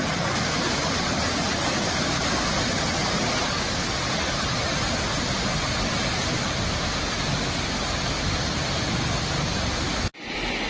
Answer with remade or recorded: recorded